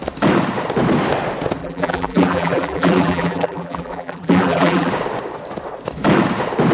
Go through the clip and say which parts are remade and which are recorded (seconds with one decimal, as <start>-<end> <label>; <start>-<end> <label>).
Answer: 0.0-1.6 recorded; 1.6-4.9 remade; 4.9-6.7 recorded